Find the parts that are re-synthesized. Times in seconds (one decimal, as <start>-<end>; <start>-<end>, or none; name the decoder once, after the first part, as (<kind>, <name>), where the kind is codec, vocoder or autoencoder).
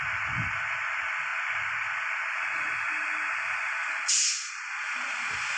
none